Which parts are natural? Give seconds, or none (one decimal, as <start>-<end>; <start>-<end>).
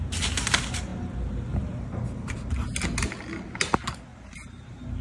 0.0-4.1